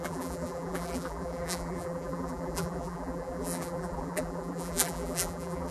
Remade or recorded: remade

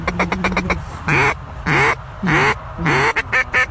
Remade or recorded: recorded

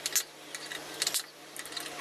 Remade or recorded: recorded